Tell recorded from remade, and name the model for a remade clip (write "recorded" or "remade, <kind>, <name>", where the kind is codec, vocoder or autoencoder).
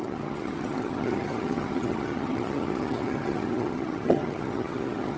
remade, vocoder, HiFi-GAN